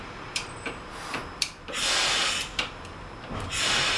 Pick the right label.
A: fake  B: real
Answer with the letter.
A